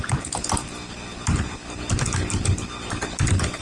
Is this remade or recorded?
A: recorded